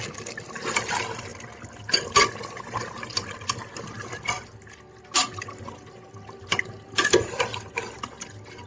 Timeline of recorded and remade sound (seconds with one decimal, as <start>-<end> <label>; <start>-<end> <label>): 0.0-8.7 recorded